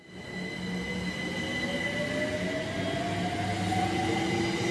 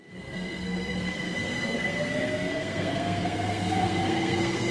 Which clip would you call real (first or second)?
first